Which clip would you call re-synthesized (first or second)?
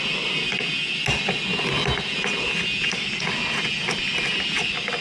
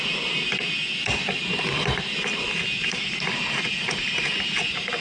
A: second